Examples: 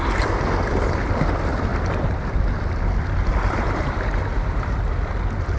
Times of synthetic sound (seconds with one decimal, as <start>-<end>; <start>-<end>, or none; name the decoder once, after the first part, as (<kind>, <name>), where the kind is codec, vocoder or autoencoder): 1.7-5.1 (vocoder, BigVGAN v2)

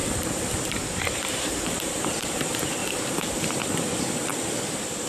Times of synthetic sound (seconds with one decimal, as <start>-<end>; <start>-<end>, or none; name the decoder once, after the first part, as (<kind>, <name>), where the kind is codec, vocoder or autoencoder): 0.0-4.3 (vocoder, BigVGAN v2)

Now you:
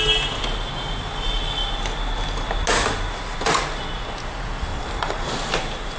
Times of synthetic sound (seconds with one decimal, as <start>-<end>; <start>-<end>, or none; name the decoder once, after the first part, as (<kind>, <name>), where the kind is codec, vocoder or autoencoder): 4.7-5.6 (vocoder, BigVGAN v2)